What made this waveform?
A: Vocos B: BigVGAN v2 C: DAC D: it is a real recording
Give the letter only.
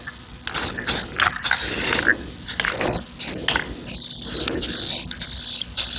D